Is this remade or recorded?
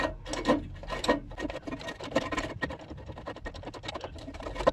recorded